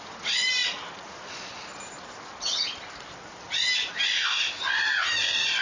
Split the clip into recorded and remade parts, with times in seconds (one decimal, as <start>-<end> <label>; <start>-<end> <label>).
0.0-5.6 recorded